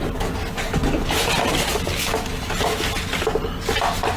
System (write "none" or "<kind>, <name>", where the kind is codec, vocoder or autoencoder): none